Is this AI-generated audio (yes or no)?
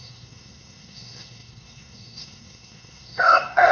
yes